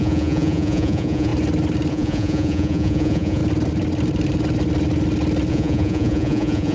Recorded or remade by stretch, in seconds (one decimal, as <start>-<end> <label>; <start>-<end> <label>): 0.0-1.3 remade; 1.3-1.9 recorded; 1.9-3.4 remade; 3.4-5.5 recorded; 5.5-6.7 remade